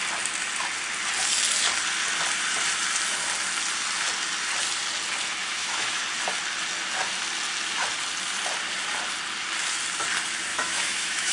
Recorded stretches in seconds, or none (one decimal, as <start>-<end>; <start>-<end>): 0.0-5.4; 6.0-10.5